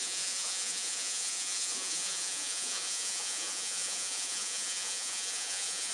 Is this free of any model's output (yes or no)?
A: no